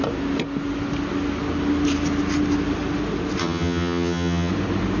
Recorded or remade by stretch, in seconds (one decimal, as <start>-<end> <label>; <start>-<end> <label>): 0.0-3.4 recorded; 3.4-4.5 remade; 4.5-5.0 recorded